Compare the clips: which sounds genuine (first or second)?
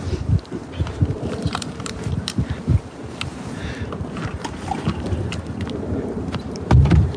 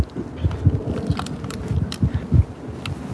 second